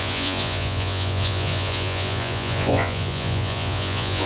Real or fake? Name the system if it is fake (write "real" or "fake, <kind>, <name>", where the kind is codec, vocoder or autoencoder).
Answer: fake, vocoder, Vocos